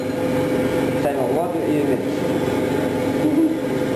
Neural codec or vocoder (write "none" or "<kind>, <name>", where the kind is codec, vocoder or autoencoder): none